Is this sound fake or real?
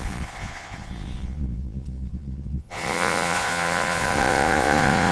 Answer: fake